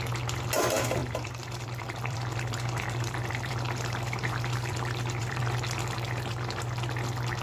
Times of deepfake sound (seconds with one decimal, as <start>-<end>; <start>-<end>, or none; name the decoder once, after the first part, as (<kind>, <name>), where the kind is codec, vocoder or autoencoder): 1.0-5.4 (vocoder, BigVGAN v2)